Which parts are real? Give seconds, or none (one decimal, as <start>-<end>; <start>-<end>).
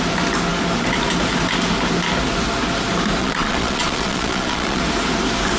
0.0-3.2; 4.8-5.6